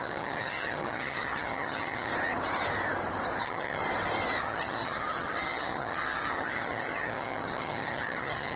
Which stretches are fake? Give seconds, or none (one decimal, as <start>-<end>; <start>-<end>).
0.0-2.1; 3.4-3.8; 4.4-8.6